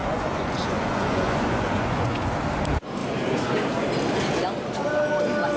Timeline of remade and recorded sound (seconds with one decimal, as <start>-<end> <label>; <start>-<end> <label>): 0.0-2.3 remade; 2.3-5.6 recorded